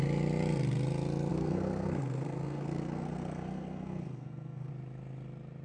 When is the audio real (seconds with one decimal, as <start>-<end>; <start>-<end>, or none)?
0.0-1.3; 4.7-5.6

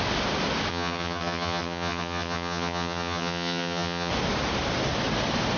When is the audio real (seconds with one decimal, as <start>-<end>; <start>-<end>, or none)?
0.0-0.7; 4.1-5.6